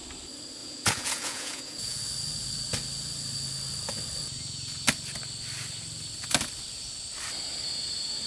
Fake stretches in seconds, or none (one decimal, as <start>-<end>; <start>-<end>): 0.6-2.0

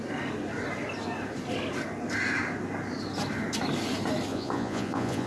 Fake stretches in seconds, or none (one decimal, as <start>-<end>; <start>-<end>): 4.3-5.3

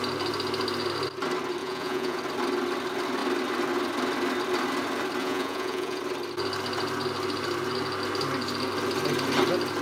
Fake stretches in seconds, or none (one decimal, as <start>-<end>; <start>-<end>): 1.6-2.2; 5.2-6.0